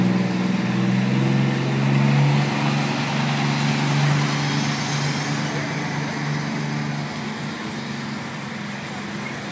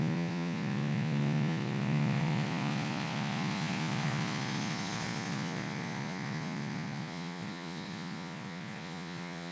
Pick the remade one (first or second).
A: second